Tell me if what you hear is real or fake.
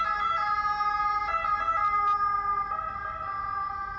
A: real